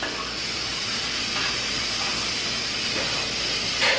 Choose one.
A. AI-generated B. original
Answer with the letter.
B